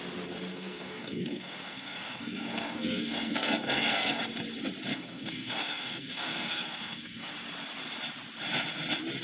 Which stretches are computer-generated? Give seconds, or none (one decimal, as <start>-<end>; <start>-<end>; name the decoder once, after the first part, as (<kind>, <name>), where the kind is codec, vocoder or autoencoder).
0.5-4.2 (codec, SNAC); 4.9-7.3